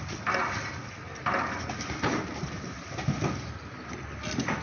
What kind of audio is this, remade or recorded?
recorded